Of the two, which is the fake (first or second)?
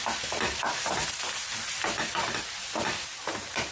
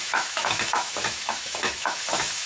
second